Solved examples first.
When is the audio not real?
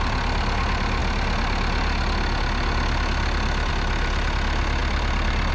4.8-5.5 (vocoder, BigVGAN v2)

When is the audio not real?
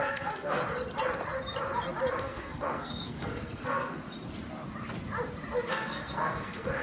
0.0-0.6 (codec, SNAC); 2.2-4.0; 5.7-6.8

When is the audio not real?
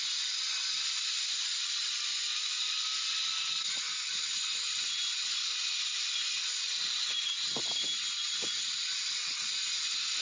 none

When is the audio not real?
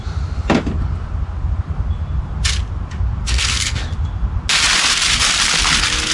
3.2-3.8 (codec, SNAC)